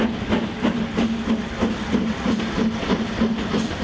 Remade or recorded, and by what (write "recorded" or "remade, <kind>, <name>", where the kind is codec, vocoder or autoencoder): recorded